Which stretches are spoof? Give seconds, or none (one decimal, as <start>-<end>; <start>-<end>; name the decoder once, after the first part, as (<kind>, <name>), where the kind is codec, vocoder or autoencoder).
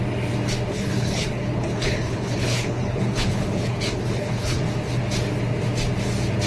0.7-4.6 (codec, HILCodec)